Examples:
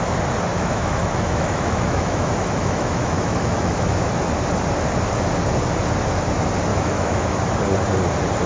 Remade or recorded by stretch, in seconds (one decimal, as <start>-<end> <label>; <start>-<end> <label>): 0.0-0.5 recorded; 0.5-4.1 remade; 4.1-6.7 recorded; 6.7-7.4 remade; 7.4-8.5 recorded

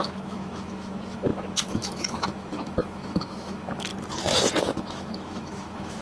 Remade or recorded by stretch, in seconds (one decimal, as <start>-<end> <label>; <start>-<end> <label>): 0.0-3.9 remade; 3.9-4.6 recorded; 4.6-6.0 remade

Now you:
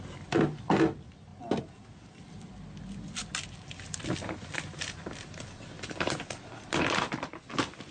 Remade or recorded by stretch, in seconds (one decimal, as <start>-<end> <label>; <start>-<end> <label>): 0.0-7.9 recorded

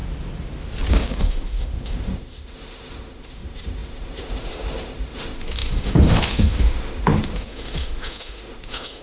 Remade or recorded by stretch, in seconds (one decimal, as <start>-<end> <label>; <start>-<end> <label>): 0.0-0.9 recorded; 0.9-9.0 remade

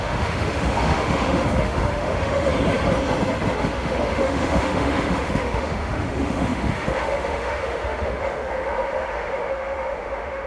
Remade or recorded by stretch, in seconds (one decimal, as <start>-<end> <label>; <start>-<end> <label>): 0.0-2.5 remade; 2.5-3.6 recorded; 3.6-10.5 remade

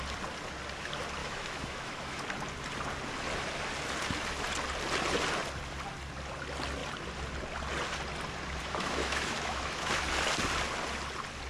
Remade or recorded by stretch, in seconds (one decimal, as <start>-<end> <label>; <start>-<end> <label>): 0.0-1.2 recorded; 1.2-2.2 remade; 2.2-8.6 recorded; 8.6-10.0 remade; 10.0-11.5 recorded

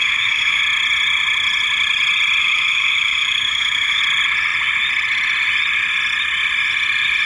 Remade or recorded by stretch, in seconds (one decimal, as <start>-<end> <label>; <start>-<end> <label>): 0.0-0.6 remade; 0.6-2.4 recorded; 2.4-4.0 remade; 4.0-7.3 recorded